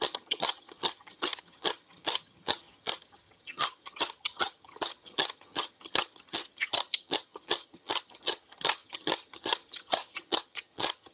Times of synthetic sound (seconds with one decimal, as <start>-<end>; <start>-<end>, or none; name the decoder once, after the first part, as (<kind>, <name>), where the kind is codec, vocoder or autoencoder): 0.0-11.1 (vocoder, HiFi-GAN)